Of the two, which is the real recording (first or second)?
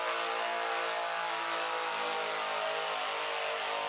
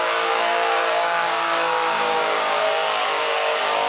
first